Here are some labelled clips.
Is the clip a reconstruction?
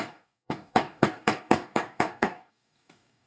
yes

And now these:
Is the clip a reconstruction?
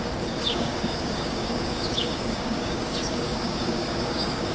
yes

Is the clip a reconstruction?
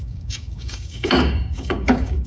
yes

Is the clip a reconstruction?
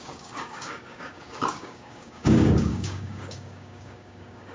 yes